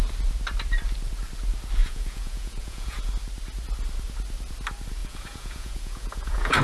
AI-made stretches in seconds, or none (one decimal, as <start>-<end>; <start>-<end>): 1.8-3.1; 5.0-6.6